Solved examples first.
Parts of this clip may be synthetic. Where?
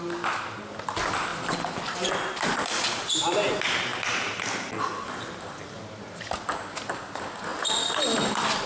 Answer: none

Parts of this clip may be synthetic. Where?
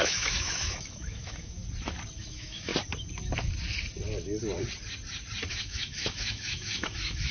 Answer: 0.0-1.6 (autoencoder, DAC-VAE); 2.2-2.7; 5.5-7.3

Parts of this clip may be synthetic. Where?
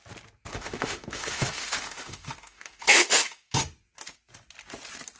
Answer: 0.5-3.6 (autoencoder, DAC-VAE)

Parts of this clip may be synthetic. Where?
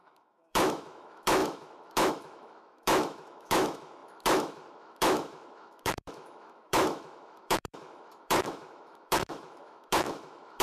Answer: 0.0-10.6 (autoencoder, DAC-VAE)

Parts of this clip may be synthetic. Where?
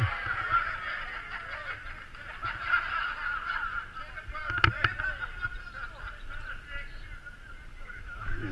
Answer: 7.7-8.5 (autoencoder, DAC-VAE)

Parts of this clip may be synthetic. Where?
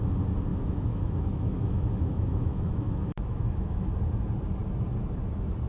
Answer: 0.5-3.9 (autoencoder, DAC-VAE)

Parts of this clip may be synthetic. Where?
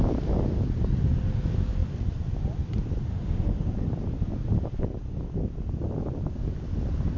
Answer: 3.1-3.7 (autoencoder, DAC-VAE)